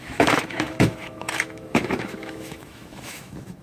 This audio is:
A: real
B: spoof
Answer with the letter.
B